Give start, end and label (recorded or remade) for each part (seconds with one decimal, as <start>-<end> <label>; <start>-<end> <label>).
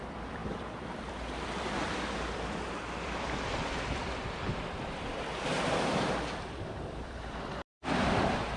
0.0-8.6 remade